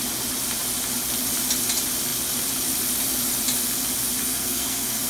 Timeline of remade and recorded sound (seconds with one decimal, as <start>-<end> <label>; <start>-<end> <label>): 0.0-4.2 recorded; 4.2-5.1 remade